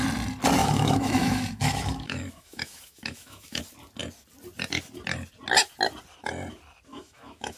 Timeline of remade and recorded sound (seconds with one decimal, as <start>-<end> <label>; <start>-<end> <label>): 0.0-0.6 recorded; 0.6-3.6 remade; 3.6-6.9 recorded; 6.9-7.6 remade